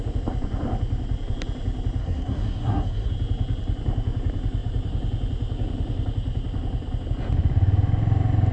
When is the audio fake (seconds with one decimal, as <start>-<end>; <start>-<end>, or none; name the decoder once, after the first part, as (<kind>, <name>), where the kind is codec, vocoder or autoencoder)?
2.0-3.1 (codec, SNAC)